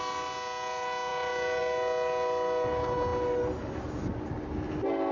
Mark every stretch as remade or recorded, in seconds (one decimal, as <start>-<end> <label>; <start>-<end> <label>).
0.0-5.1 recorded